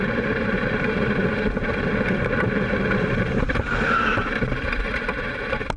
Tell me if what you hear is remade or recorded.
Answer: remade